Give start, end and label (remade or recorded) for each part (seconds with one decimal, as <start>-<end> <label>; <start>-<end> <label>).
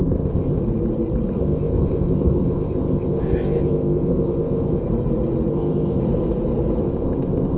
0.0-0.6 remade; 0.6-1.4 recorded; 1.4-4.8 remade; 4.8-5.5 recorded; 5.5-6.0 remade; 6.0-6.8 recorded; 6.8-7.6 remade